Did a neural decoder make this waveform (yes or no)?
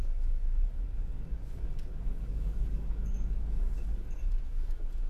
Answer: yes